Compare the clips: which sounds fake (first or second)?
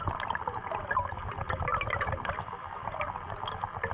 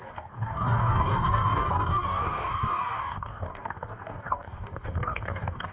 second